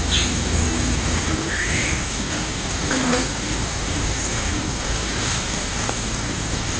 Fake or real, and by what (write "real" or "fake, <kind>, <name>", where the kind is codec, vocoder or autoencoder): fake, codec, DAC